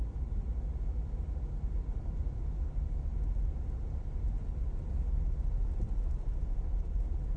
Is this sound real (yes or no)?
yes